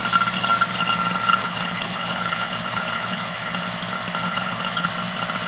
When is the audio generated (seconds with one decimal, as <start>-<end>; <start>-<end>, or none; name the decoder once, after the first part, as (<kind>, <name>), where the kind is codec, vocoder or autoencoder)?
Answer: 1.4-3.6 (codec, HILCodec); 4.2-4.9